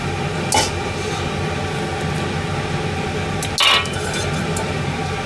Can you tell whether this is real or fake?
real